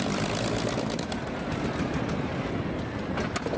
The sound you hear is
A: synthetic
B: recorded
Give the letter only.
B